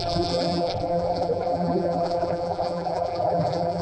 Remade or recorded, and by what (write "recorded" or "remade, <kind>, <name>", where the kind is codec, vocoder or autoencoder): remade, vocoder, BigVGAN v2